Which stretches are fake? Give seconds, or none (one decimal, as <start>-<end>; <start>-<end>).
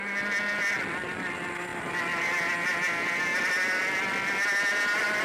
none